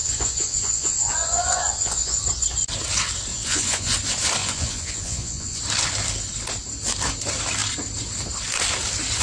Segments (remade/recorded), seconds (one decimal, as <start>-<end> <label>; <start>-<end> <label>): 0.0-2.2 remade; 2.2-3.3 recorded; 3.3-3.9 remade; 3.9-4.4 recorded; 4.4-5.6 remade; 5.6-9.2 recorded